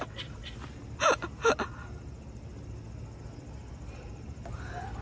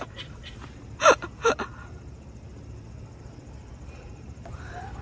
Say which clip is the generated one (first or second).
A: second